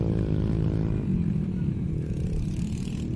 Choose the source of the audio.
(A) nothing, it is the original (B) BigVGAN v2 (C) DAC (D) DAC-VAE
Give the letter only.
A